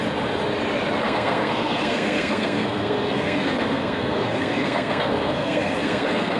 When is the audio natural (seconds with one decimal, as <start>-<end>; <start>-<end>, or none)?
0.0-1.0